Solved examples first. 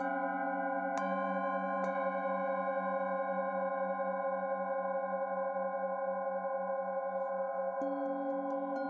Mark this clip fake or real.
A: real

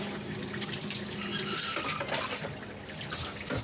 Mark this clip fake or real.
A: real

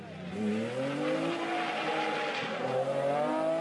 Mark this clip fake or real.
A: real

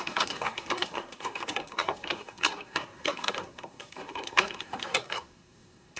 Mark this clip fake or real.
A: fake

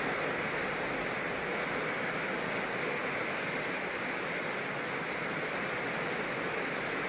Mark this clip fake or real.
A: real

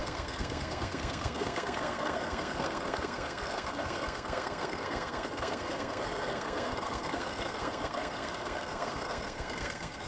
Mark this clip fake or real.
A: fake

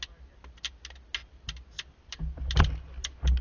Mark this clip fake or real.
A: real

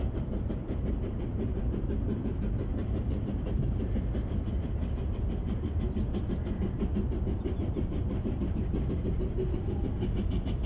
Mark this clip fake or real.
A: real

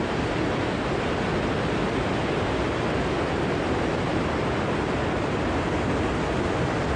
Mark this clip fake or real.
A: real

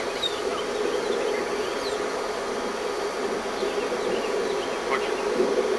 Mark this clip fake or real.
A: real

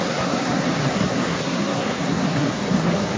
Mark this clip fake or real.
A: fake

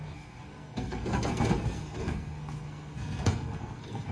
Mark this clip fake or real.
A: fake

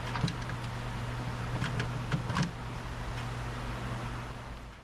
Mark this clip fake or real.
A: real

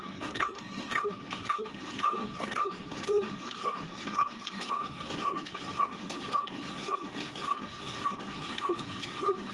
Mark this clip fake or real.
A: fake